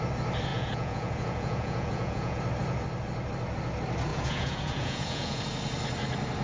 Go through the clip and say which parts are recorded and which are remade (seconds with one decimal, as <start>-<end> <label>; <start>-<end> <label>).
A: 0.0-0.5 recorded; 0.5-2.4 remade; 2.4-4.1 recorded; 4.1-5.4 remade; 5.4-6.4 recorded